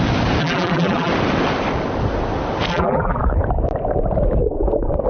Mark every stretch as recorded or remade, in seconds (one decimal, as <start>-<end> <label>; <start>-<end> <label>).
0.0-0.4 recorded; 0.4-1.1 remade; 1.1-2.7 recorded; 2.7-3.2 remade; 3.2-5.1 recorded